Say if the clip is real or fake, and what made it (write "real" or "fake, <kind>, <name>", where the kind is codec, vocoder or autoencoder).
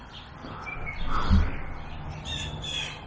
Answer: real